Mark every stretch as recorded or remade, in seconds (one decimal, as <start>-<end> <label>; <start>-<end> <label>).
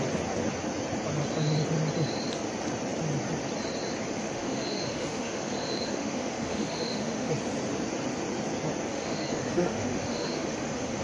0.0-4.2 recorded; 4.2-7.3 remade; 7.3-8.9 recorded; 8.9-11.0 remade